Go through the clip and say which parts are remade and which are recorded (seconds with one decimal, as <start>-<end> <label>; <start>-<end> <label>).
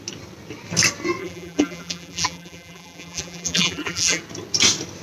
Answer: 0.0-1.2 recorded; 1.2-4.2 remade; 4.2-5.0 recorded